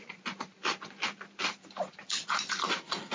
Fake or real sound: fake